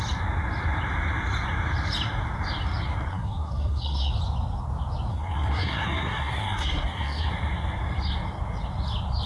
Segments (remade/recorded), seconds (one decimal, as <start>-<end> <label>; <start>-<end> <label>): 0.0-3.1 recorded; 3.1-4.1 remade; 4.1-5.1 recorded; 5.1-7.3 remade; 7.3-9.3 recorded